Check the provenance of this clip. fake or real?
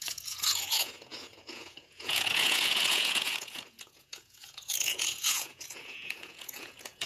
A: fake